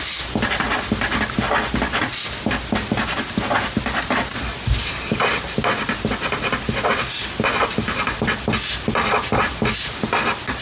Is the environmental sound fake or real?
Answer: real